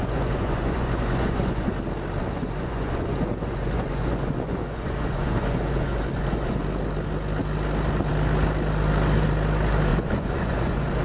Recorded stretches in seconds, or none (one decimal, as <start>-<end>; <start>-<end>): 1.7-2.2; 6.6-9.9